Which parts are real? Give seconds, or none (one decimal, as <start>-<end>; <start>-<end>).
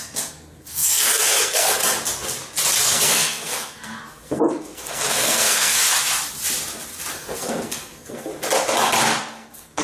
1.8-2.8; 5.8-7.1; 8.3-9.2